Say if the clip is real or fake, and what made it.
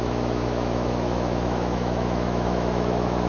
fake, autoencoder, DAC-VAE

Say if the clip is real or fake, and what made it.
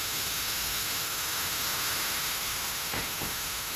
fake, autoencoder, DAC-VAE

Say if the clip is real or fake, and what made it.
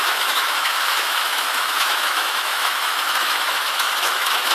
fake, autoencoder, DAC-VAE